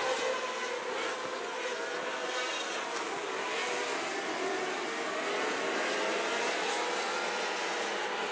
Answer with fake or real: real